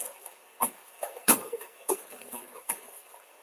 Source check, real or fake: fake